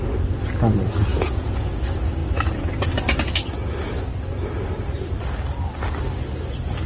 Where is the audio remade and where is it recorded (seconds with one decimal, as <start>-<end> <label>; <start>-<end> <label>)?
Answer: 0.0-1.1 recorded; 1.1-1.8 remade; 1.8-6.9 recorded